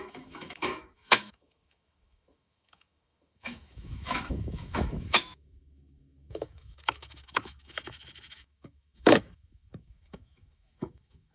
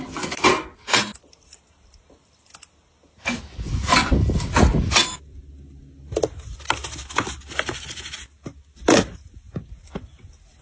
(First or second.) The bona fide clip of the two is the second